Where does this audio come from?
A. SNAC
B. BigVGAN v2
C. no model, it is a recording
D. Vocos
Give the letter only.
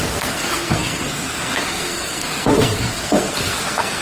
A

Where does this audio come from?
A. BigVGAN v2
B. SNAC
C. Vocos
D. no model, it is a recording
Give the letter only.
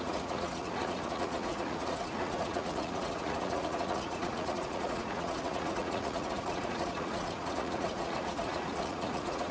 C